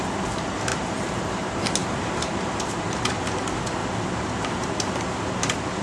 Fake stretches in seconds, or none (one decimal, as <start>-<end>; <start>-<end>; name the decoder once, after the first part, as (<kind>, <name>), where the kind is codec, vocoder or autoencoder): 0.7-1.2 (vocoder, BigVGAN v2); 1.8-3.3

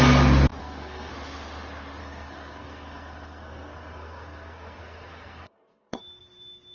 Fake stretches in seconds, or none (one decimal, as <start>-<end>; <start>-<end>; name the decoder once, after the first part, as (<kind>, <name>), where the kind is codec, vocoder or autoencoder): 0.6-1.1 (codec, SNAC); 2.0-6.0

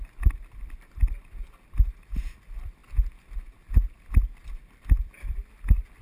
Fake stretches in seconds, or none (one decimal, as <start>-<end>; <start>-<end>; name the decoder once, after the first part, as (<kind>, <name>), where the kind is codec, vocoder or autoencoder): 0.0-2.8 (vocoder, BigVGAN v2); 4.6-6.0

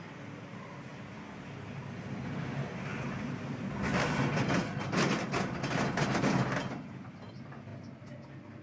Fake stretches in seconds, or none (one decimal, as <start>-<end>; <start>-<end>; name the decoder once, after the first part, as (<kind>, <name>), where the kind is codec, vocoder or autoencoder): none

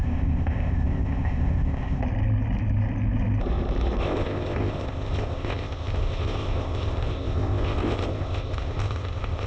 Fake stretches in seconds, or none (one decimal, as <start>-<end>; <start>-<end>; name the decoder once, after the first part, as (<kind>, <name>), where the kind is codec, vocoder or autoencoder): 0.0-2.0 (codec, ZipCodec); 4.0-9.5

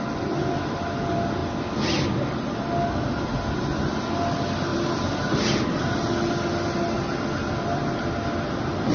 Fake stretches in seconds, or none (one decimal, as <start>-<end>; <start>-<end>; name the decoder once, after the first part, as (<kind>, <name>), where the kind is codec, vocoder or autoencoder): 4.7-5.9 (vocoder, BigVGAN v2)

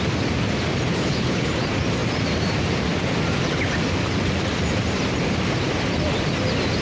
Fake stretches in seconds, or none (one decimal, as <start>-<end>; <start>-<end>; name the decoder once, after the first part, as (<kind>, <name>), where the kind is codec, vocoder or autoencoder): 0.9-1.5 (codec, HILCodec)

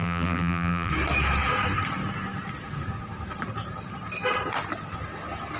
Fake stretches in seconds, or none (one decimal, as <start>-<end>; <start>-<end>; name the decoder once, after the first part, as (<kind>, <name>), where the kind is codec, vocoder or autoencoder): 0.0-0.9 (vocoder, BigVGAN v2)